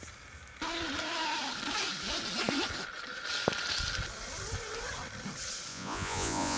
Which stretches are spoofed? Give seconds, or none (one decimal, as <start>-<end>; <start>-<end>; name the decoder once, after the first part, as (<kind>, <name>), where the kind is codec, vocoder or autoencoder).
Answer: 5.7-6.6 (vocoder, Vocos)